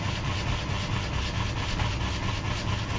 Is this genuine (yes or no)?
yes